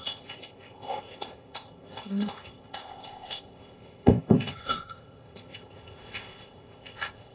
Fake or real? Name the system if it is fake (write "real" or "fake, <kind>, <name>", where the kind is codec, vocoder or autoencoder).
fake, codec, ZipCodec